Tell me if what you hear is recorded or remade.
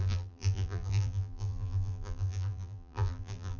remade